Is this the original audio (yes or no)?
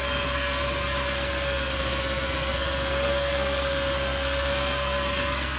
no